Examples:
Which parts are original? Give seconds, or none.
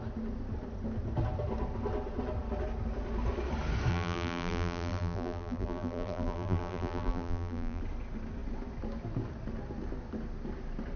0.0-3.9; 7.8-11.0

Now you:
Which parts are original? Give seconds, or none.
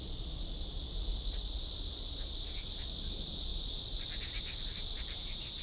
0.0-3.5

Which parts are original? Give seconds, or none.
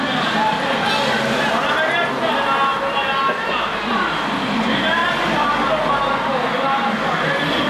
0.0-5.0; 6.0-7.7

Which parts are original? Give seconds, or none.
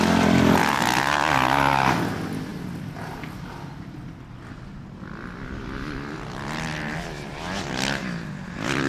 0.0-8.9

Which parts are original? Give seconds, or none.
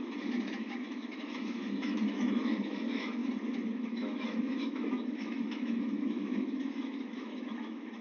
3.2-3.7